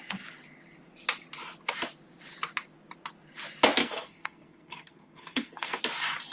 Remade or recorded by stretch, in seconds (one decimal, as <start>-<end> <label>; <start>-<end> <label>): 0.0-3.8 recorded; 3.8-5.8 remade; 5.8-6.3 recorded